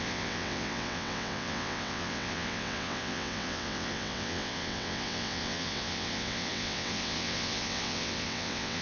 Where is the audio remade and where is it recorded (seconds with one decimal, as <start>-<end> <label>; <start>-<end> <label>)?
0.0-8.8 remade